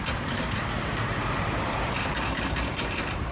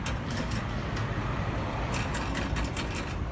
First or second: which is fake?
first